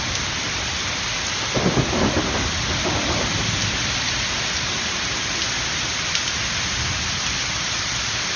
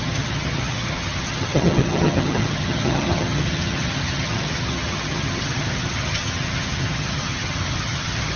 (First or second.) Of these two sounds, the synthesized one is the second